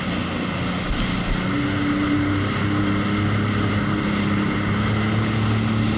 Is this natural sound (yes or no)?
yes